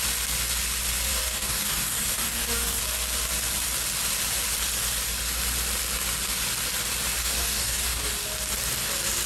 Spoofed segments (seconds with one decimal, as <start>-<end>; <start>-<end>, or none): 1.1-2.8; 7.2-8.1